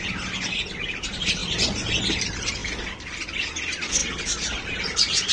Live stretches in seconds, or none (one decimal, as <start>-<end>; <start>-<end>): 0.0-5.3